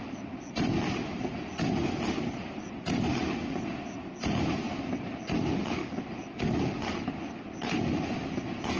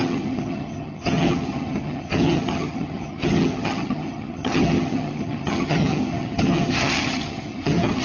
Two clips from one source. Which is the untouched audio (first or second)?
first